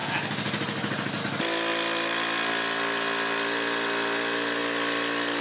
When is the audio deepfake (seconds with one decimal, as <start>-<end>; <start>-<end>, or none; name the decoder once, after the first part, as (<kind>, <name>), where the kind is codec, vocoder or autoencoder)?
none